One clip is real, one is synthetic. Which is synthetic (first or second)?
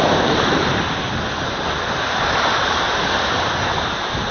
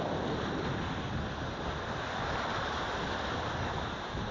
first